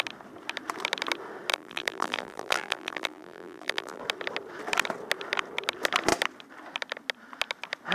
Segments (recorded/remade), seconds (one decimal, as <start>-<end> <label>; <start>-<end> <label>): 0.0-1.5 recorded; 1.5-4.0 remade; 4.0-7.9 recorded